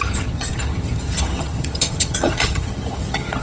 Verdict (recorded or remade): remade